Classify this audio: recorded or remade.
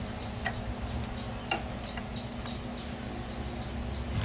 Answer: recorded